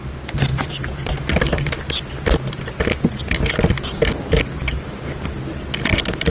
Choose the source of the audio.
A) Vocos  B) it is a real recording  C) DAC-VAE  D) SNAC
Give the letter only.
B